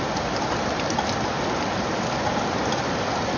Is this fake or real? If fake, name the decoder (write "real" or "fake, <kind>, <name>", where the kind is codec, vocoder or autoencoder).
real